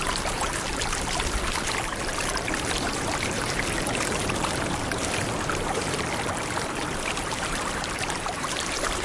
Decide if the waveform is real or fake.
fake